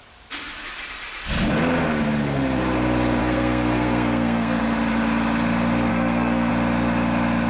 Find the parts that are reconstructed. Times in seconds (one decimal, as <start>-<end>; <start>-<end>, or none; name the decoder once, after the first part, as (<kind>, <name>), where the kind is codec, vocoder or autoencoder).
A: 3.2-4.6 (codec, SNAC); 5.9-6.5